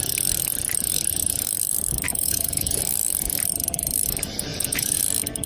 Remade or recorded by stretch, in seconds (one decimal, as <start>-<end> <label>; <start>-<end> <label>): 0.0-2.1 recorded; 2.1-2.8 remade; 2.8-4.5 recorded; 4.5-5.0 remade; 5.0-5.5 recorded